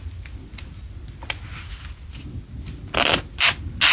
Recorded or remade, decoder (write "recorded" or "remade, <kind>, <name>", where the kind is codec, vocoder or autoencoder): recorded